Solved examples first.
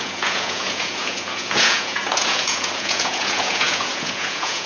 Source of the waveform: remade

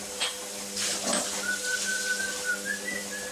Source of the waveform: recorded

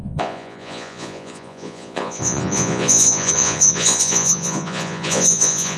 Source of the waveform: remade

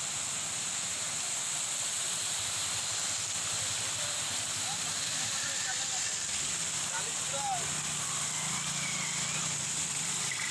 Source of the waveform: recorded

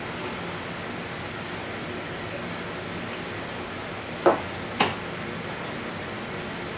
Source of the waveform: recorded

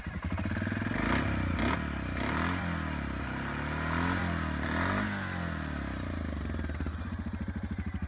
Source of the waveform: recorded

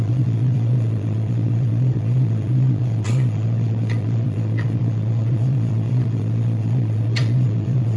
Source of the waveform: remade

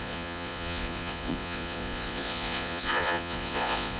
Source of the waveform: remade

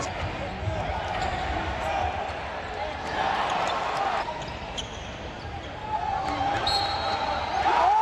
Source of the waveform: recorded